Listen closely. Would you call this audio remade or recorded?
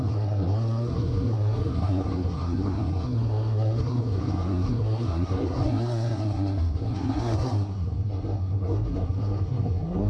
remade